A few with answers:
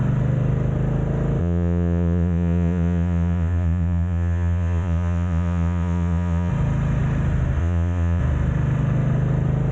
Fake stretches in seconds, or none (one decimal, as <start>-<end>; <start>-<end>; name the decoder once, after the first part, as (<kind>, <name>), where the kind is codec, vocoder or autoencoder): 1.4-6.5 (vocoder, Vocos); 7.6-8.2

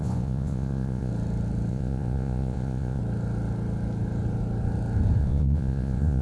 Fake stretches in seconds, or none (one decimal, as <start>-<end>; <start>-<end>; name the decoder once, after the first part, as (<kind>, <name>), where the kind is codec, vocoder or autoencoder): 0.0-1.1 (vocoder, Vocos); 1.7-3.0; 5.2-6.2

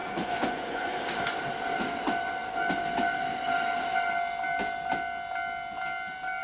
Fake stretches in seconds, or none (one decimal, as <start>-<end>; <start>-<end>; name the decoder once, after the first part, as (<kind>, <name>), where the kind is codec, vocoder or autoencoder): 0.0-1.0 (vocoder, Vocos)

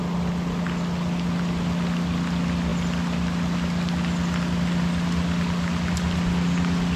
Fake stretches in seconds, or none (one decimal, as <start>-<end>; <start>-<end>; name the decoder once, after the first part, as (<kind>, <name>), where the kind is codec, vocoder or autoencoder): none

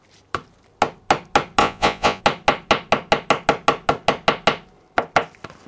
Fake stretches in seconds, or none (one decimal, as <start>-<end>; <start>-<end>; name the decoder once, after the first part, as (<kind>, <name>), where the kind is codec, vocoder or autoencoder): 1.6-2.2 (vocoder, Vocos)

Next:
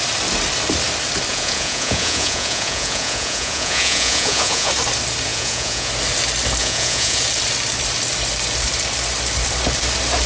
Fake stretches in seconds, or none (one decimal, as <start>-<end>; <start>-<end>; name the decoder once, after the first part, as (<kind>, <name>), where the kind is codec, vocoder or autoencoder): 1.3-4.7 (vocoder, Vocos); 5.3-5.9; 6.6-7.2

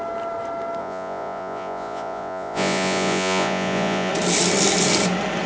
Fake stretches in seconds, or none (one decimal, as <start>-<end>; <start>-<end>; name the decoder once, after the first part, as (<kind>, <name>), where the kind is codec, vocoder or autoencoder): 0.8-4.1 (vocoder, Vocos)